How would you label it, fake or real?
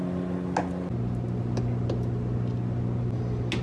real